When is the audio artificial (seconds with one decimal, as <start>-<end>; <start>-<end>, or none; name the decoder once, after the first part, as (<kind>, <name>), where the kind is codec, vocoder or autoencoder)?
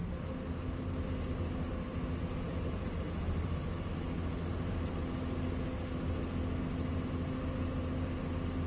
none